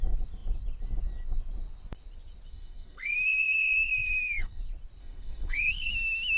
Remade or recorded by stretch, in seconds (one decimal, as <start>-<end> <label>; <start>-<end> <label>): 0.0-2.5 recorded; 2.5-4.6 remade; 4.6-5.0 recorded; 5.0-5.9 remade; 5.9-6.4 recorded